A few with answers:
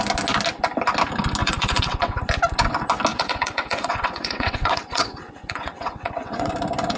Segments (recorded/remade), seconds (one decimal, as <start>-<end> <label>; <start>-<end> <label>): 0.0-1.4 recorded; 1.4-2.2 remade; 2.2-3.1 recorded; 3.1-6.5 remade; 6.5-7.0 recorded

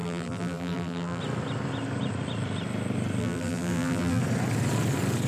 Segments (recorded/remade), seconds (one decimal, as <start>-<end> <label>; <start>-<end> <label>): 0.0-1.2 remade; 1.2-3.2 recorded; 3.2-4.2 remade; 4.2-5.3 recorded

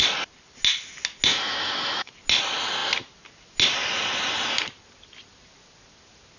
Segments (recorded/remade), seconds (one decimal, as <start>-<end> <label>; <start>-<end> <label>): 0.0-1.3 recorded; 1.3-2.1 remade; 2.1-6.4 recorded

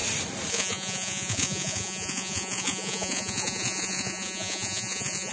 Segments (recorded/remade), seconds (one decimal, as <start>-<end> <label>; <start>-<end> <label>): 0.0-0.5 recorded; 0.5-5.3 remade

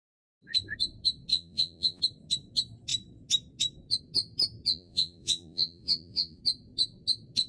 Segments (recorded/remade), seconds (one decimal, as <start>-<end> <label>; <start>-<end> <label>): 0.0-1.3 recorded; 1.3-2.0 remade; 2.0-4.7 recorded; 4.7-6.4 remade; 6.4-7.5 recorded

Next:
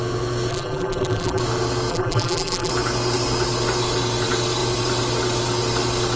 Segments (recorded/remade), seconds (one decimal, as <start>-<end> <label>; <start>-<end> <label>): 0.0-0.5 recorded; 0.5-1.4 remade; 1.4-1.9 recorded; 1.9-2.7 remade; 2.7-6.2 recorded

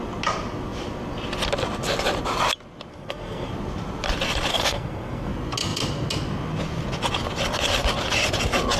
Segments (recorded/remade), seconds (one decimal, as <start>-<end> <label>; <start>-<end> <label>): 0.0-2.9 recorded; 2.9-3.5 remade; 3.5-4.5 recorded; 4.5-5.3 remade; 5.3-8.8 recorded